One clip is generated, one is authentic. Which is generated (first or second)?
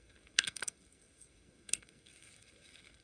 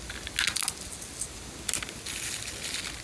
first